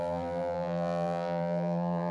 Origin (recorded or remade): remade